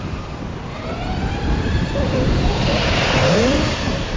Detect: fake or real fake